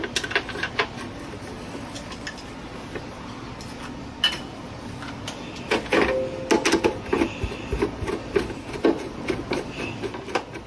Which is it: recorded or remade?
recorded